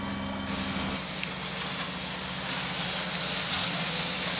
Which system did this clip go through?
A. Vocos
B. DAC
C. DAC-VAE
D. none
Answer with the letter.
D